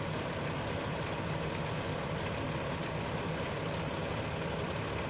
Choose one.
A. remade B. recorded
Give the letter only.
B